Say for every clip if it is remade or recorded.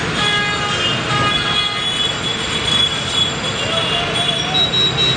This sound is recorded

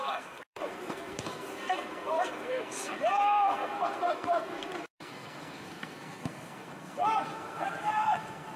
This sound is remade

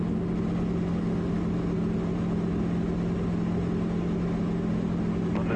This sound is recorded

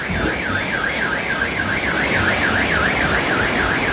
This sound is recorded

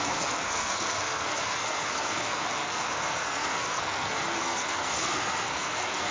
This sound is remade